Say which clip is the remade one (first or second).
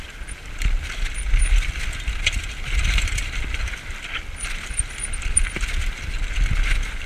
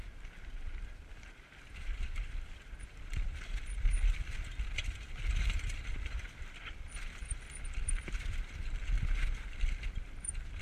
second